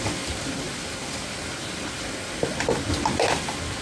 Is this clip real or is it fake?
real